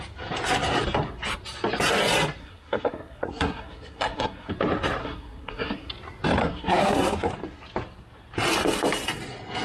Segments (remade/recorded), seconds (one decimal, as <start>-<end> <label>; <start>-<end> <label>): 0.0-2.4 recorded; 2.4-4.5 remade; 4.5-5.0 recorded; 5.0-5.9 remade; 5.9-6.4 recorded; 6.4-7.3 remade; 7.3-9.6 recorded